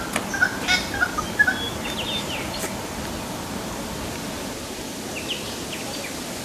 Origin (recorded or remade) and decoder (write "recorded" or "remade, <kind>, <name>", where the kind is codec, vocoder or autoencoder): recorded